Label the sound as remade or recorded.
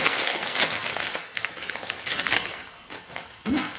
remade